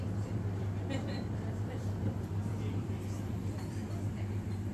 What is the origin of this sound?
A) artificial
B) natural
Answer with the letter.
A